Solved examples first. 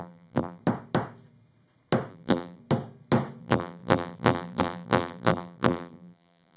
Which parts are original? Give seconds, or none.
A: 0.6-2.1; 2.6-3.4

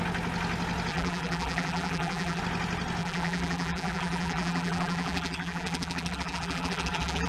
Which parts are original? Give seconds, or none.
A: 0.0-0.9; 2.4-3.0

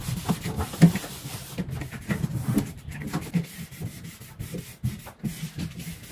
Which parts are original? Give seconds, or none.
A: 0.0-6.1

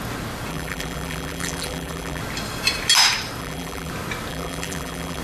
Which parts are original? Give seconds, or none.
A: 0.0-0.5; 2.2-3.4; 3.9-4.3

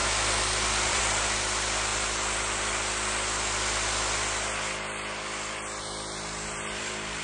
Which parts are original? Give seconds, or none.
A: 1.0-7.2

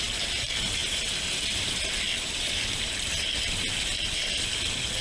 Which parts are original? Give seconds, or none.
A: 0.0-5.0

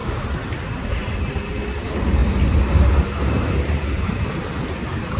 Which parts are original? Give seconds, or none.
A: 0.0-1.8; 2.2-2.9